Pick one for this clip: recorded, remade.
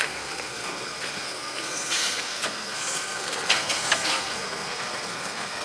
remade